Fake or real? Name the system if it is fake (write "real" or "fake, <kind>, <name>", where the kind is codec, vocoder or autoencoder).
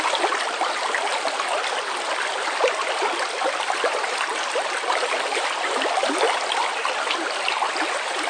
real